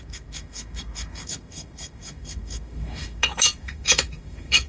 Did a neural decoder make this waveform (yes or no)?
yes